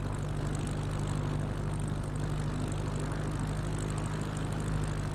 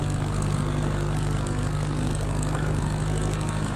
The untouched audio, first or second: first